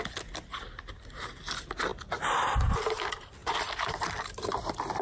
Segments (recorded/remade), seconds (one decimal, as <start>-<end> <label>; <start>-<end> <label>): 0.0-5.0 recorded